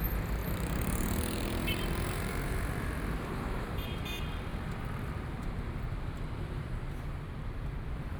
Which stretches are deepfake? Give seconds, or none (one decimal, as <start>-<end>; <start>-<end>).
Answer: 0.4-4.0; 4.5-5.1